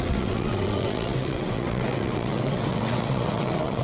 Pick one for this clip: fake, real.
fake